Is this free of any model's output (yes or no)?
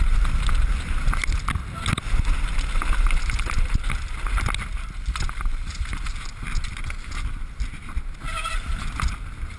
yes